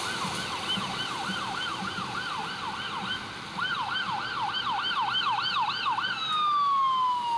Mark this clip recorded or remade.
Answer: recorded